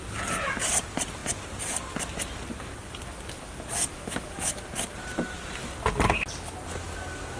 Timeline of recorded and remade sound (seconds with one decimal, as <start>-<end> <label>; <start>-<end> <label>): 0.0-3.9 recorded; 3.9-4.5 remade; 4.5-7.4 recorded